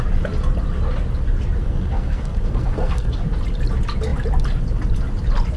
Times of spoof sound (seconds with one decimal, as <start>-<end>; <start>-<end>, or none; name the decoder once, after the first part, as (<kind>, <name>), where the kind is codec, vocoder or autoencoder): 1.6-3.2 (codec, SNAC)

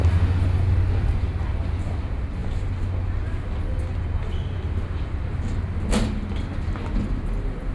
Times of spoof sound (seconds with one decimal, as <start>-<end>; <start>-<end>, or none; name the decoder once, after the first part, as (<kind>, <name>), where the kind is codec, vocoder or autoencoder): none